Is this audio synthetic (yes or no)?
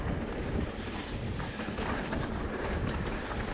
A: no